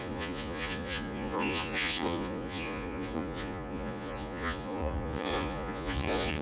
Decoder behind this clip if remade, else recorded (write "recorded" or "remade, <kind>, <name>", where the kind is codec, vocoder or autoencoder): remade, vocoder, Vocos